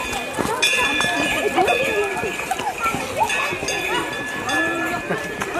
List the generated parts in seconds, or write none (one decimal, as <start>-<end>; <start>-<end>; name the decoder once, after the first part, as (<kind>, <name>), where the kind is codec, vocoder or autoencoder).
none